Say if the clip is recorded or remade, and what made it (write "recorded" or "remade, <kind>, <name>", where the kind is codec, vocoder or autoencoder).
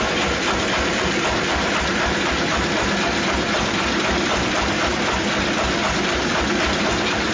recorded